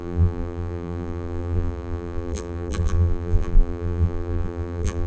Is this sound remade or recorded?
remade